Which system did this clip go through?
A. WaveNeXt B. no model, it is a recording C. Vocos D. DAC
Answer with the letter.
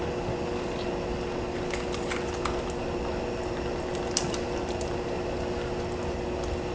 B